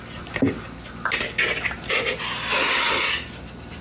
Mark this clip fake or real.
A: real